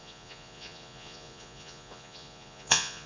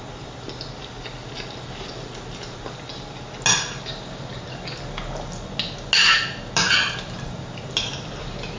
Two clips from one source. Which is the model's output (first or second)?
first